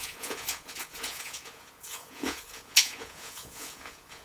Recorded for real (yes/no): no